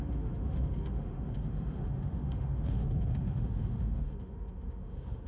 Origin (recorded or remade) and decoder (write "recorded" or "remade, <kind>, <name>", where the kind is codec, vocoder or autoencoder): remade, autoencoder, DAC-VAE